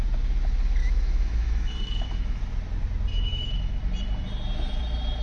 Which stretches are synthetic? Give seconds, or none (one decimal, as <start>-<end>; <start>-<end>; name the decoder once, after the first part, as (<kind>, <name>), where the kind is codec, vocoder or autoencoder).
0.8-2.4 (autoencoder, DAC-VAE); 3.1-3.7